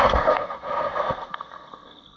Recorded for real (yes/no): no